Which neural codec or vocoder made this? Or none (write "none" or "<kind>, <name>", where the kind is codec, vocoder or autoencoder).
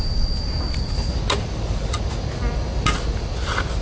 none